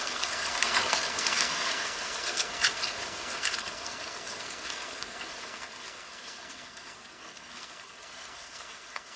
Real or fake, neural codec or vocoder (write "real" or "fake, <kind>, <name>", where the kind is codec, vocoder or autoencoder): fake, codec, SNAC